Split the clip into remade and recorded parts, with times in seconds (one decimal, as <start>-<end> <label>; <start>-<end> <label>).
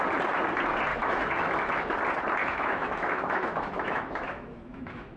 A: 0.0-0.9 recorded; 0.9-1.7 remade; 1.7-2.4 recorded; 2.4-5.2 remade